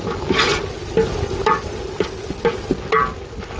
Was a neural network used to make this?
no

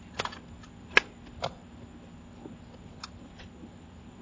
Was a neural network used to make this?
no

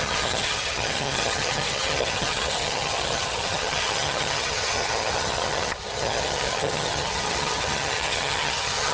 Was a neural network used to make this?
yes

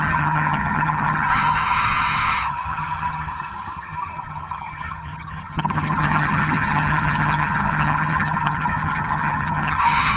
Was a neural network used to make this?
yes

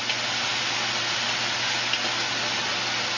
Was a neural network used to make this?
no